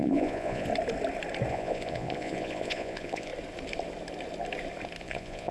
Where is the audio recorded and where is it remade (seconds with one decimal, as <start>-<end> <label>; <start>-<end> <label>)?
0.0-0.7 remade; 0.7-1.5 recorded; 1.5-3.3 remade; 3.3-5.0 recorded; 5.0-5.5 remade